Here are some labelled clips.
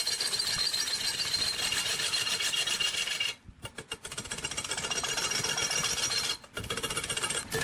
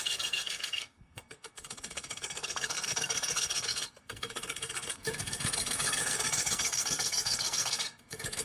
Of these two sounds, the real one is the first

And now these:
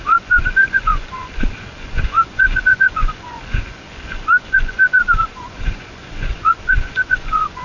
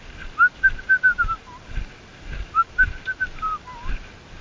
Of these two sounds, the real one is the second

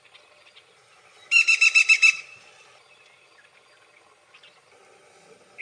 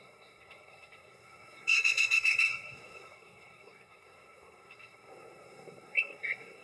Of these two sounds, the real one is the first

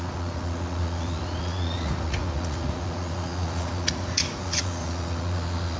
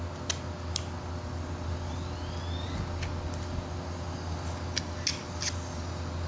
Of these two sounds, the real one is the second